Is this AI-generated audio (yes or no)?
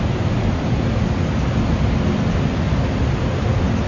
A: no